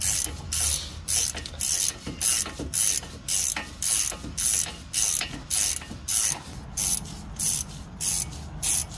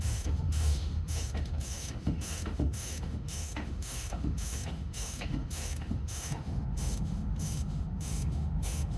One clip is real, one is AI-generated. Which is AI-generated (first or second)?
second